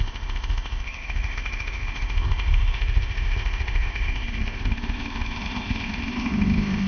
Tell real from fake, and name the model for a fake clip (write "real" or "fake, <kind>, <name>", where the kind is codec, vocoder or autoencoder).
fake, codec, ZipCodec